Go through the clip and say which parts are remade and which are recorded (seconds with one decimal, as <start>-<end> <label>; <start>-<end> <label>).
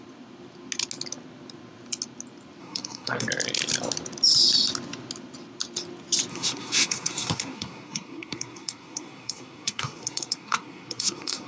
0.0-2.6 recorded; 2.6-3.3 remade; 3.3-6.3 recorded; 6.3-11.5 remade